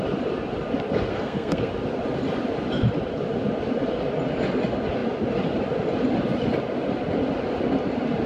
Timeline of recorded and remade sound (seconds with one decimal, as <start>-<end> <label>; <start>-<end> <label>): 0.0-1.1 recorded; 1.1-1.7 remade; 1.7-8.3 recorded